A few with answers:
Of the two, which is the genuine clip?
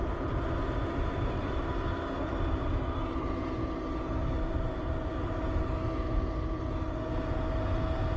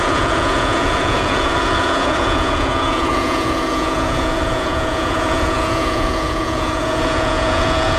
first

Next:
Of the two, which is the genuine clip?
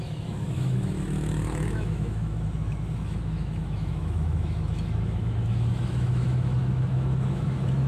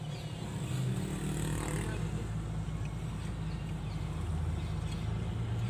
second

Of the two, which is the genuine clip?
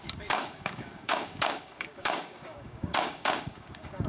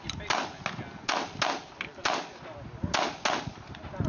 second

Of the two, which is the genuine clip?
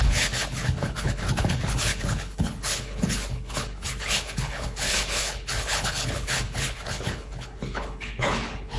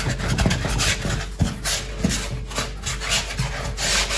second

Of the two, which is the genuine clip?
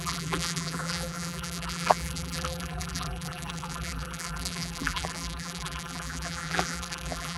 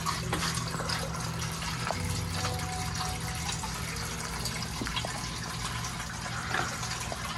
second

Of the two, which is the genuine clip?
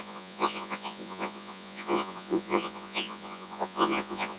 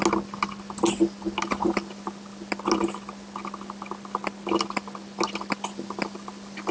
second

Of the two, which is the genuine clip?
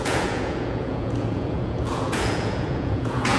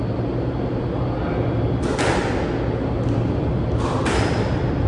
second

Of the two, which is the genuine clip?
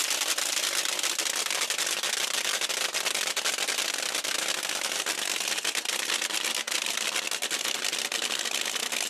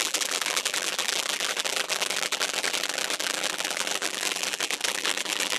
first